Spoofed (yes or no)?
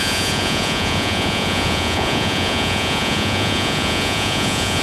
yes